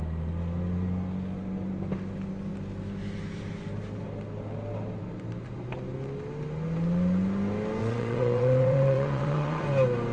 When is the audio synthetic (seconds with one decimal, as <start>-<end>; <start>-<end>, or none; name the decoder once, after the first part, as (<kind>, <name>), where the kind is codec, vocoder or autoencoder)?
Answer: 7.8-9.6 (vocoder, WaveNeXt)

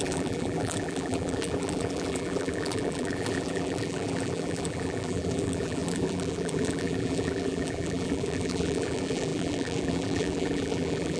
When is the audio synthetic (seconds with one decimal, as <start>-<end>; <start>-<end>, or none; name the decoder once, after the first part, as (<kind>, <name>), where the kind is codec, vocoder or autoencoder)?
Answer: 0.0-11.2 (vocoder, BigVGAN v2)